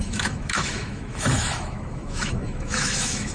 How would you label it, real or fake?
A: fake